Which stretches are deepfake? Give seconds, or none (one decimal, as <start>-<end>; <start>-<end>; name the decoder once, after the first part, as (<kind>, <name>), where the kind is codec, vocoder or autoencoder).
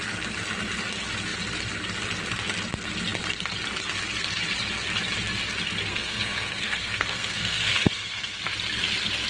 5.9-8.4 (codec, SNAC)